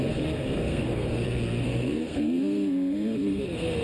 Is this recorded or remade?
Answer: remade